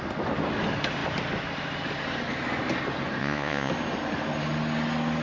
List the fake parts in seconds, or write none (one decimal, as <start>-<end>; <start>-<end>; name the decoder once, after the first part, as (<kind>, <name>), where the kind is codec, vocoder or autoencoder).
3.2-3.7 (vocoder, Vocos)